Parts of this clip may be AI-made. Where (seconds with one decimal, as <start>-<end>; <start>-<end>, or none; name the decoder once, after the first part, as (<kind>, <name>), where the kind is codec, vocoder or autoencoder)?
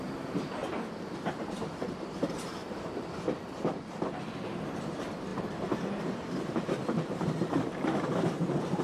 0.0-0.6 (vocoder, BigVGAN v2); 1.3-2.6; 3.3-8.8